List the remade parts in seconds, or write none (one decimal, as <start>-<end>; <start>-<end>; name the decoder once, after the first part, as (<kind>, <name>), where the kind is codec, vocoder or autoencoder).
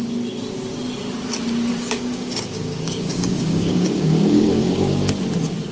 1.7-5.1 (codec, DAC)